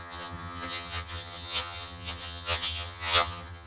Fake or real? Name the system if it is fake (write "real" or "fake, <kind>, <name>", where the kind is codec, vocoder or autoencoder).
fake, vocoder, HiFi-GAN